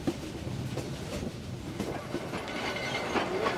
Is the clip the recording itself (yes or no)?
yes